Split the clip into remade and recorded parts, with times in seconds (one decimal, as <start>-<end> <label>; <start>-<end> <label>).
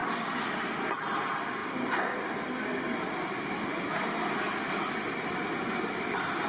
0.0-0.6 remade; 0.6-6.5 recorded